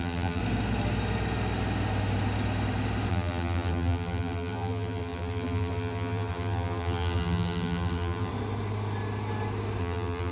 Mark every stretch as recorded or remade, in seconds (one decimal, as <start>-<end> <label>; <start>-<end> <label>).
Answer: 0.0-0.4 remade; 0.4-3.1 recorded; 3.1-8.3 remade; 8.3-9.8 recorded; 9.8-10.3 remade